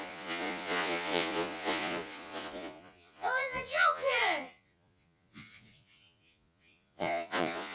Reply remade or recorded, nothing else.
remade